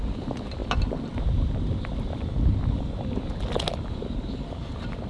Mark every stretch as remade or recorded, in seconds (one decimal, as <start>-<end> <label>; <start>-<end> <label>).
0.0-5.1 recorded